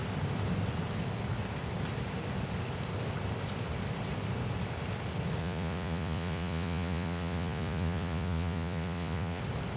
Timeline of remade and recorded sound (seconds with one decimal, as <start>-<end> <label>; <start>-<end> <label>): 0.0-5.4 recorded; 5.4-9.4 remade; 9.4-9.8 recorded